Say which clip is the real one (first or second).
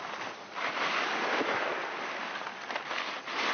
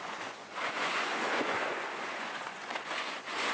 first